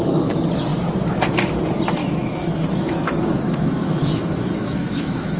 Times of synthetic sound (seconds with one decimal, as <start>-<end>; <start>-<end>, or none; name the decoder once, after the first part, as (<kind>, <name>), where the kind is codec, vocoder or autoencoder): 2.0-5.4 (autoencoder, DAC-VAE)